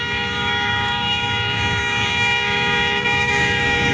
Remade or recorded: remade